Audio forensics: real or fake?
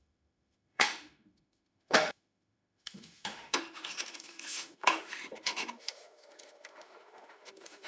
fake